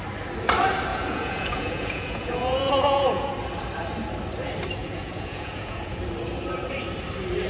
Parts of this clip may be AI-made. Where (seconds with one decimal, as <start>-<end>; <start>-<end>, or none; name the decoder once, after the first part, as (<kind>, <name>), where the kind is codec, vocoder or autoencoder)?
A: 0.9-3.3 (vocoder, Vocos); 4.8-6.0